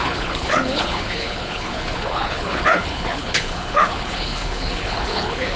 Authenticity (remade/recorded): remade